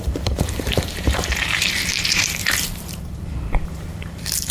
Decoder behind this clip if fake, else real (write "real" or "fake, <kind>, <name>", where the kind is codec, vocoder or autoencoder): fake, vocoder, BigVGAN v2